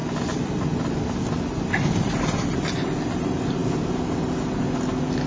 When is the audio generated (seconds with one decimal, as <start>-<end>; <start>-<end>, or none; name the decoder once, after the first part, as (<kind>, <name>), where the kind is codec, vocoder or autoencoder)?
0.0-2.1 (vocoder, BigVGAN v2)